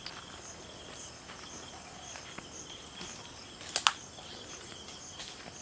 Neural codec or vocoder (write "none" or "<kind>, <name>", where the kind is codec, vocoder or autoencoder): none